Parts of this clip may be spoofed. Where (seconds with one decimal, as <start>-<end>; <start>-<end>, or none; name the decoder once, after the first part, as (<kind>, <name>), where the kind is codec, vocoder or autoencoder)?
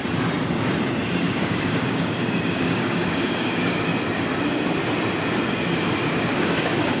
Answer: 1.2-3.9 (codec, DAC); 6.2-7.0